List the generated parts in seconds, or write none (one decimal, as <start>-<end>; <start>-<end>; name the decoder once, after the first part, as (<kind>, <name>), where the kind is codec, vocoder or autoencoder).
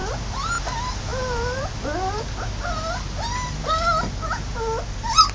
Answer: none